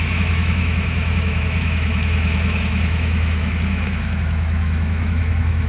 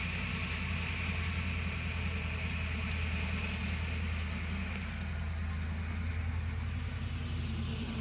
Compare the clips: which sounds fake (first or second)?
first